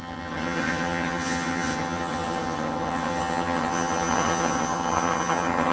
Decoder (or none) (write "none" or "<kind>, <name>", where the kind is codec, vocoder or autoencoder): vocoder, HiFi-GAN